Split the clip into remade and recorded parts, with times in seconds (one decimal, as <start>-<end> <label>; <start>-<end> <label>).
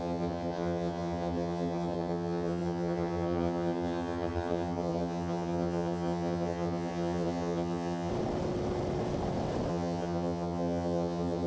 0.0-8.1 remade; 8.1-9.7 recorded; 9.7-11.5 remade